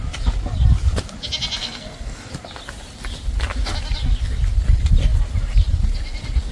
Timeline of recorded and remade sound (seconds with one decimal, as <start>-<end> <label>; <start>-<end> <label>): 0.0-1.6 recorded; 1.6-2.3 remade; 2.3-6.5 recorded